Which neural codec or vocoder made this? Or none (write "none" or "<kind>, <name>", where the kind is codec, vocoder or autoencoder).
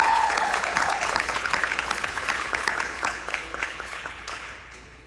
codec, HILCodec